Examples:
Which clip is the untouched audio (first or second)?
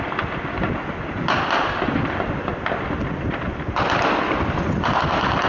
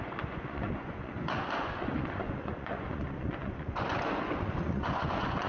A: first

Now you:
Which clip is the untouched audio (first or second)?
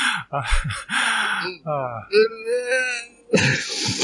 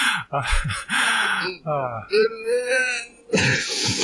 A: first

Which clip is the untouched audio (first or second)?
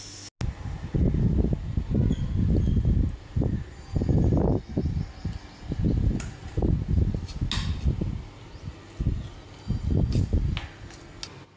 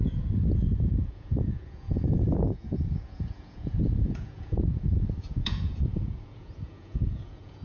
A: first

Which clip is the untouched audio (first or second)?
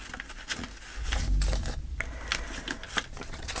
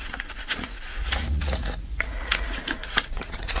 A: first